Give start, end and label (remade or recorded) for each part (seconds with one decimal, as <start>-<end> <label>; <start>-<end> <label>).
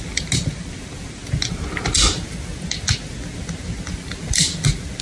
0.0-5.0 recorded